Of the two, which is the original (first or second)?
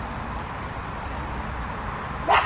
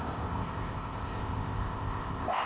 first